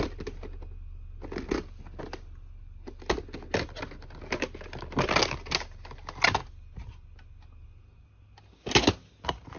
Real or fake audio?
real